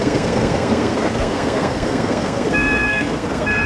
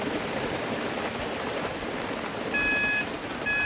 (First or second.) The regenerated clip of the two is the first